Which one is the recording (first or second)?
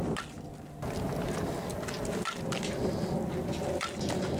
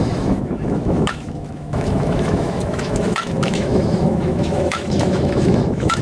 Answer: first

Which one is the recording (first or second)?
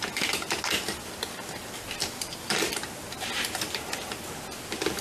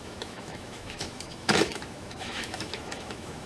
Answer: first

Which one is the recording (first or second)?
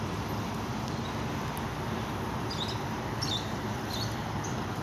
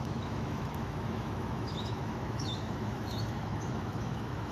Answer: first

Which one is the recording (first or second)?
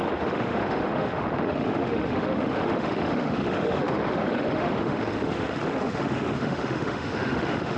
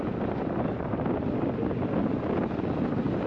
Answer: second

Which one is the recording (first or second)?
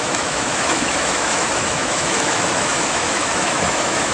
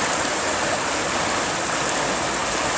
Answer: second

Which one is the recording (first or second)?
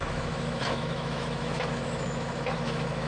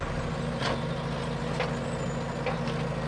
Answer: second